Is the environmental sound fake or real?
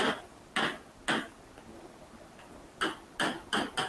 real